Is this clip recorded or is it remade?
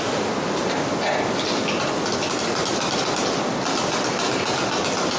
recorded